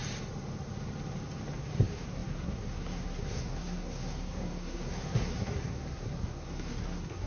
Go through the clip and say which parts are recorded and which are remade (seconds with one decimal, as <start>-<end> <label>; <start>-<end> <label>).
0.0-1.6 recorded; 1.6-7.3 remade